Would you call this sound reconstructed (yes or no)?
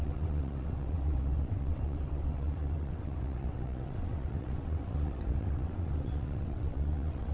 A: yes